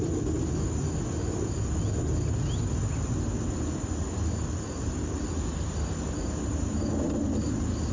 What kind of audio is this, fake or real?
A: real